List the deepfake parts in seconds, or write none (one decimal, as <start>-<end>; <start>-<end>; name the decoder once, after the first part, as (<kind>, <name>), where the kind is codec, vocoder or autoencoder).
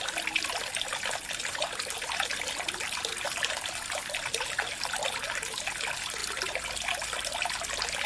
none